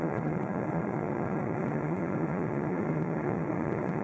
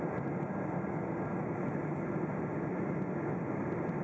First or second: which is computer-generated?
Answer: first